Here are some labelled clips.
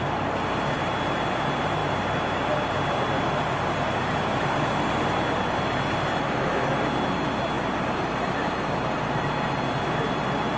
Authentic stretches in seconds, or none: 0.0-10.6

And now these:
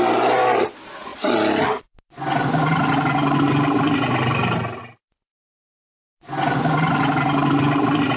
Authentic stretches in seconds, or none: 0.0-8.2

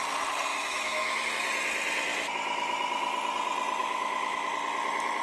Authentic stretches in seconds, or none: 0.0-0.5; 1.3-3.8; 4.5-5.2